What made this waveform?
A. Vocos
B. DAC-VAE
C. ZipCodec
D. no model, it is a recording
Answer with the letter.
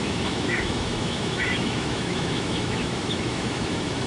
B